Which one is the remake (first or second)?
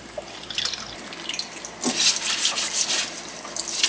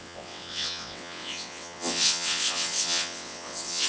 second